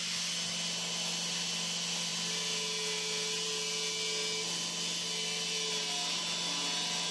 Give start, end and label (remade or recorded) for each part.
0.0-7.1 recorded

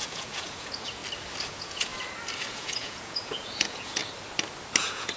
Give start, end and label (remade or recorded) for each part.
0.0-1.0 remade; 1.0-1.5 recorded; 1.5-1.9 remade; 1.9-2.5 recorded; 2.5-4.0 remade; 4.0-4.8 recorded; 4.8-5.2 remade

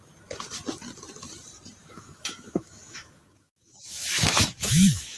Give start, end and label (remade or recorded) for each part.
0.0-1.8 recorded; 1.8-5.2 remade

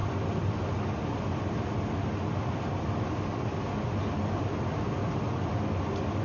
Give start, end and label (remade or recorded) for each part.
0.0-6.2 recorded

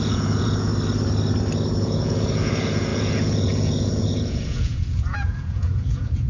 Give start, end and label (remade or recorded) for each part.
0.0-0.7 remade; 0.7-1.8 recorded; 1.8-6.3 remade

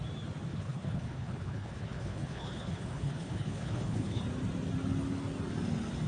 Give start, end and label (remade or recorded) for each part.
0.0-0.5 recorded; 0.5-4.2 remade; 4.2-6.1 recorded

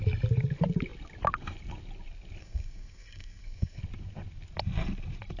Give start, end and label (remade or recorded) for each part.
0.0-2.4 recorded; 2.4-3.8 remade; 3.8-5.4 recorded